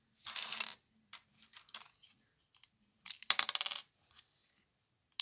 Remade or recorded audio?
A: recorded